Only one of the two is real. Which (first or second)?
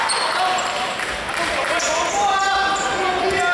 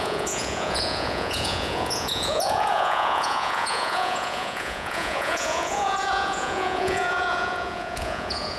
first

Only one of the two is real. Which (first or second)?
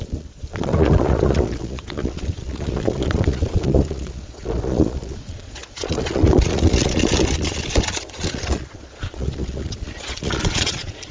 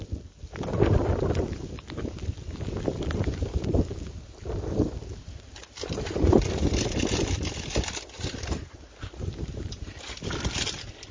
second